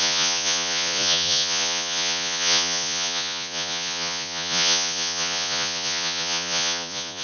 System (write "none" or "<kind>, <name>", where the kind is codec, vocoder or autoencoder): vocoder, Vocos